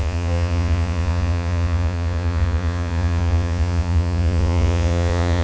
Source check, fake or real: fake